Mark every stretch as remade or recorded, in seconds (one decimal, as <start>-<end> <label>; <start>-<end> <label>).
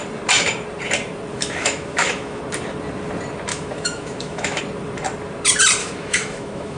0.0-1.3 recorded; 1.3-2.4 remade; 2.4-3.5 recorded; 3.5-4.6 remade; 4.6-5.8 recorded; 5.8-6.8 remade